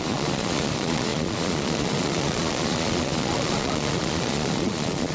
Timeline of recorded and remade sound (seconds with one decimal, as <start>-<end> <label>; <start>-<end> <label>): 0.0-5.1 remade